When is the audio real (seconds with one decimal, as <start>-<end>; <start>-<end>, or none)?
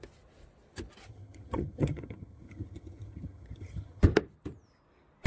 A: 0.0-1.1; 4.0-5.3